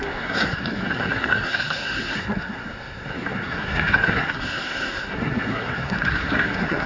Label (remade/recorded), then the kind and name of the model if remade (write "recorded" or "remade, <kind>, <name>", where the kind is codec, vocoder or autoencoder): remade, codec, SNAC